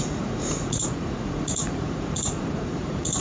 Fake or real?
fake